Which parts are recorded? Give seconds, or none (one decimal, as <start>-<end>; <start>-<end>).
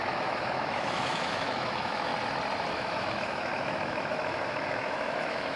2.1-2.7